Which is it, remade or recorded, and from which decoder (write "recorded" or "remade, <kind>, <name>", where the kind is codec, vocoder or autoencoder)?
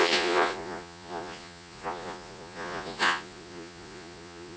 remade, vocoder, Vocos